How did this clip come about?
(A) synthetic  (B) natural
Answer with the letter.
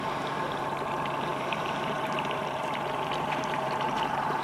A